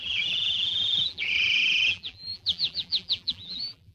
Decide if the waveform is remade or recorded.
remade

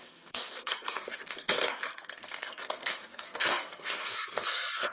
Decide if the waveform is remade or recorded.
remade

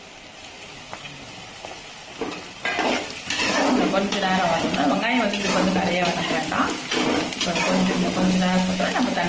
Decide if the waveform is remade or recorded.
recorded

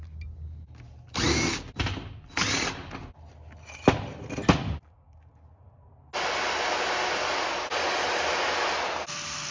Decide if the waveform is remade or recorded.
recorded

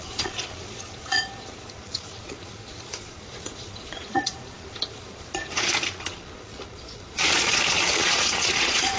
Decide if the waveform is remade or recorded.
remade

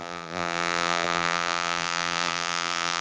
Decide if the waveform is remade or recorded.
remade